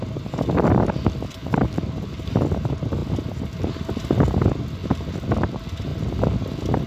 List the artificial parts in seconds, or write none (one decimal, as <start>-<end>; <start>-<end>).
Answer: 1.4-2.1